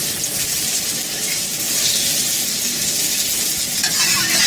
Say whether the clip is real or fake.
real